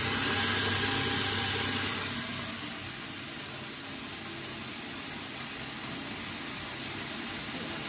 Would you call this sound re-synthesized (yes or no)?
no